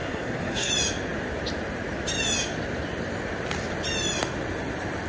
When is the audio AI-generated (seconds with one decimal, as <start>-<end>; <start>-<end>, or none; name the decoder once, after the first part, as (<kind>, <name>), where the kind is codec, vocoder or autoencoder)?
0.0-0.7 (codec, SNAC)